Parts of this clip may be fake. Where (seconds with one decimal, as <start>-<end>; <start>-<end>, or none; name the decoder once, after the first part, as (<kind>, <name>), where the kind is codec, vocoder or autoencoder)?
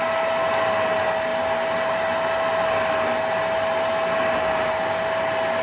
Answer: none